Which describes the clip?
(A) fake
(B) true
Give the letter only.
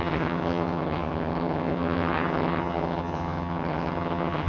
A